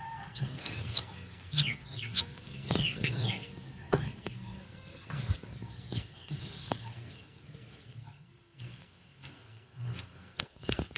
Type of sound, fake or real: fake